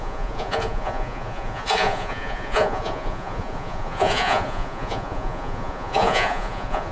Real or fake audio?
fake